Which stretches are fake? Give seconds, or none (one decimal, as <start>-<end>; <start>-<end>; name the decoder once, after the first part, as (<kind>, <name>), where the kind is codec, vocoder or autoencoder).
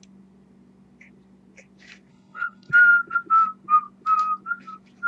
2.1-2.7 (codec, HILCodec)